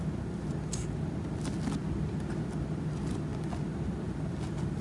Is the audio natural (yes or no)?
yes